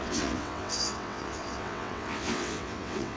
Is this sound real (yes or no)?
no